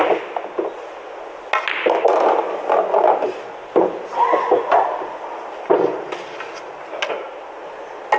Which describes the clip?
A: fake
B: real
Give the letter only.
B